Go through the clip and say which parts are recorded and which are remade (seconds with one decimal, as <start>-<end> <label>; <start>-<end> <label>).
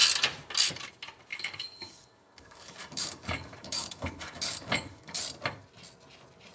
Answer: 0.0-1.3 recorded; 1.3-5.2 remade; 5.2-6.5 recorded